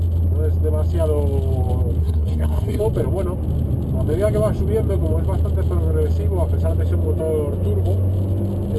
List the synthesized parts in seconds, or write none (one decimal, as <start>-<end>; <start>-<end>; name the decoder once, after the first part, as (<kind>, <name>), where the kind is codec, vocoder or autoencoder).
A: 2.0-2.8 (codec, SNAC)